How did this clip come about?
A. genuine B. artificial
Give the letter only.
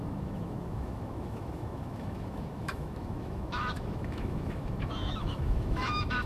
B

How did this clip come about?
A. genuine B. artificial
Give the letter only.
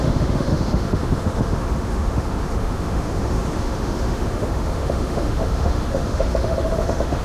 B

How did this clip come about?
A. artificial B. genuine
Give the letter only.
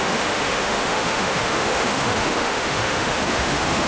A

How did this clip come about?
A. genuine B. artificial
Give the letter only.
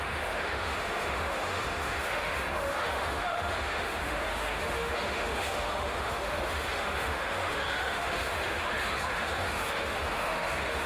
B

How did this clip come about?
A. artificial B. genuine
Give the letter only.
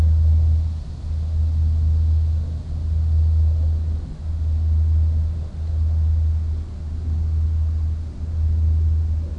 B